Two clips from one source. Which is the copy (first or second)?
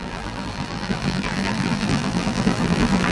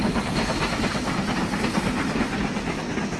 first